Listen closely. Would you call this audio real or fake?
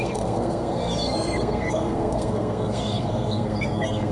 fake